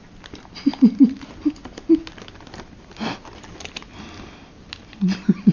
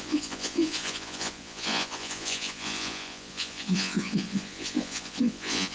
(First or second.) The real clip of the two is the first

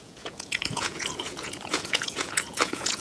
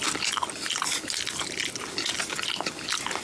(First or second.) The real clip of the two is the second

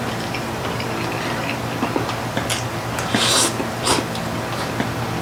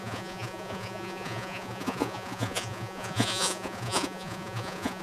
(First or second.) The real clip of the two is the first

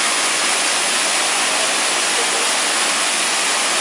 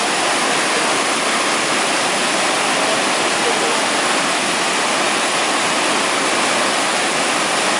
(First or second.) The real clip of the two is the second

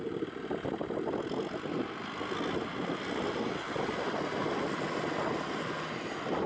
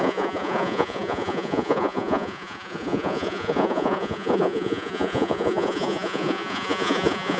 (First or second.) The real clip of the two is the first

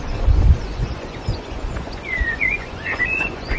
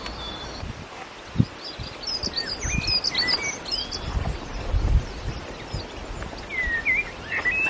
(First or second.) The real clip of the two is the second